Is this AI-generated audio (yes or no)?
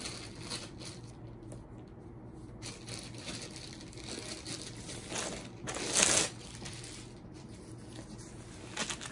no